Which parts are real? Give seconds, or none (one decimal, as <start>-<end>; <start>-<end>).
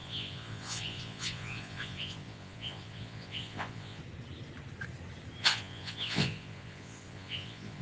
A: 4.0-5.4